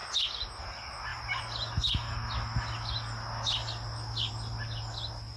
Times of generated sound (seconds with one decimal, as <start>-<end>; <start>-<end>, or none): none